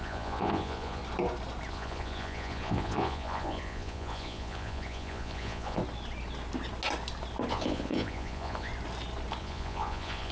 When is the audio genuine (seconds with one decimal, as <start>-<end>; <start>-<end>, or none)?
1.0-1.7; 5.8-7.5; 8.7-9.4